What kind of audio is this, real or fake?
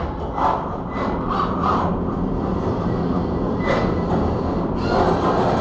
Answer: real